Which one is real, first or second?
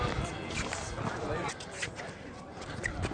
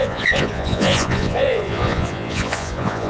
first